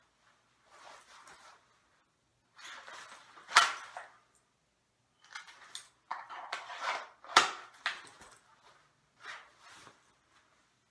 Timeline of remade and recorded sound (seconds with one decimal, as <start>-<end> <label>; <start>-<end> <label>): 0.0-10.9 recorded